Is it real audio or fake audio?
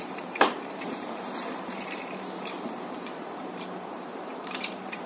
fake